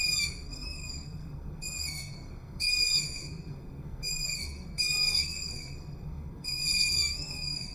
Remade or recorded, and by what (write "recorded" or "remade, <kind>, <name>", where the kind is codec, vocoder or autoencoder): remade, codec, SNAC